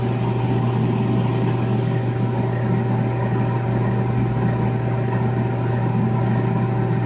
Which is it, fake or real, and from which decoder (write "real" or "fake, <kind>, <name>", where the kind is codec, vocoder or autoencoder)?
real